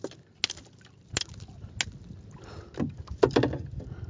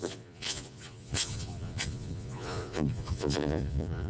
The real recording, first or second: first